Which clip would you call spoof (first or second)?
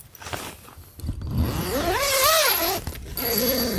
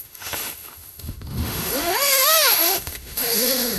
second